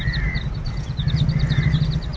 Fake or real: real